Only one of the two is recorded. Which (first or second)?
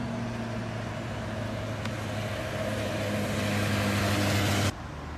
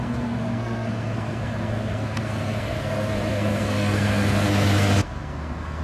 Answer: first